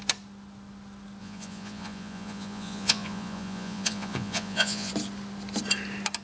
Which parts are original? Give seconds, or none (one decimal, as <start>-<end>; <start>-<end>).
0.0-1.2; 4.9-6.2